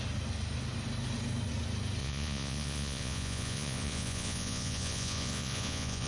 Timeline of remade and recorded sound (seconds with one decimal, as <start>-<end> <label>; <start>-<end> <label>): 0.0-2.0 recorded; 2.0-6.1 remade